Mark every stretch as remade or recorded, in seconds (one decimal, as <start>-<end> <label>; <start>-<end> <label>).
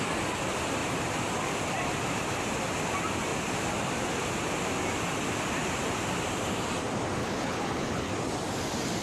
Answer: 0.0-7.2 recorded; 7.2-8.1 remade; 8.1-9.0 recorded